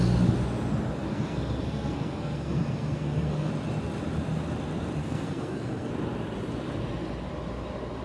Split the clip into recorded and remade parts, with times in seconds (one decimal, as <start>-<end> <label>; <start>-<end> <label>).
0.0-1.1 recorded; 1.1-3.5 remade; 3.5-5.0 recorded; 5.0-5.9 remade; 5.9-8.0 recorded